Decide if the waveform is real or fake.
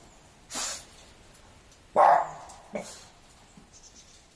real